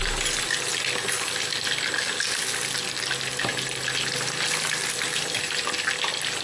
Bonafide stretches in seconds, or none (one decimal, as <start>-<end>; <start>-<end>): 0.0-6.4